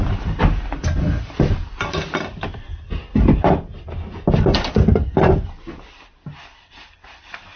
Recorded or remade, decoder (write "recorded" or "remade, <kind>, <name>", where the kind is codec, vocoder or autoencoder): recorded